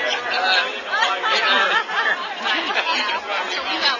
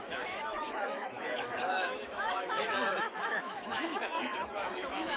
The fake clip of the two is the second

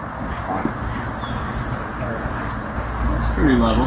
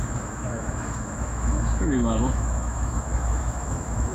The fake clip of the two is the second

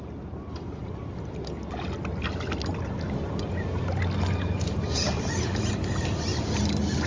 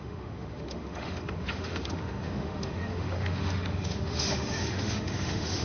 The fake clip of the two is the second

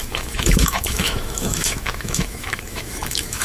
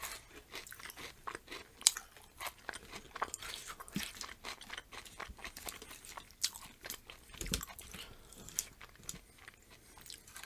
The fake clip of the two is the first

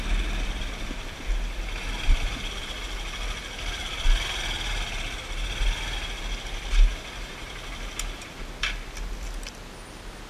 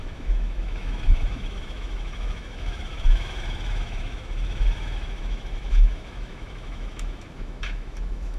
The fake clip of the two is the second